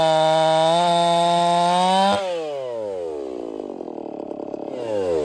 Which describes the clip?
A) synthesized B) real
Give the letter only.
B